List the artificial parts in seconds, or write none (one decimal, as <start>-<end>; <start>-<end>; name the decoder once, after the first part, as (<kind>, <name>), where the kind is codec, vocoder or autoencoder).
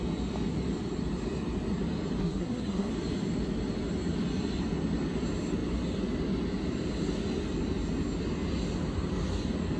2.2-2.9 (codec, SNAC)